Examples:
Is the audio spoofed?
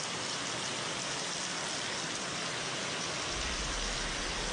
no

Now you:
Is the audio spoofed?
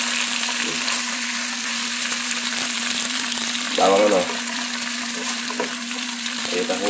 yes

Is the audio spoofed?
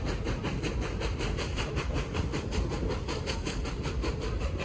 yes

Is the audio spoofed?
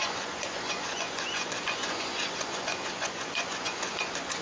yes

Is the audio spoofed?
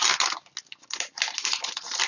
no